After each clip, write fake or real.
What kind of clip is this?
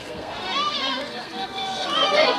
fake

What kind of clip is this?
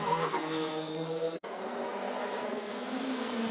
fake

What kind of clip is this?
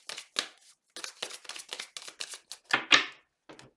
real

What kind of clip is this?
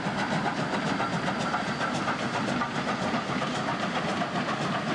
real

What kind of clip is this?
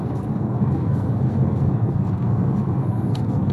fake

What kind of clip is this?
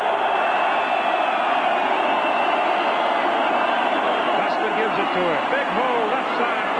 real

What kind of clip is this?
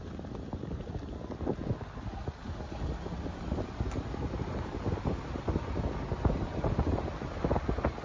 real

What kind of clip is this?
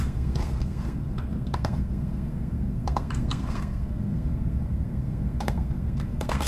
fake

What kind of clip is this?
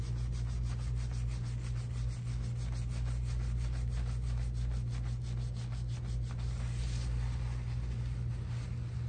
real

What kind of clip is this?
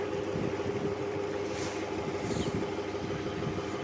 real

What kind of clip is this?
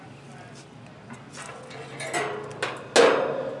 real